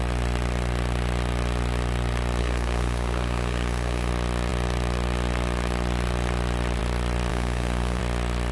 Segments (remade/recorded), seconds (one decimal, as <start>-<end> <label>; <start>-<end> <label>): 0.0-2.4 recorded; 2.4-4.1 remade; 4.1-7.3 recorded; 7.3-8.0 remade; 8.0-8.5 recorded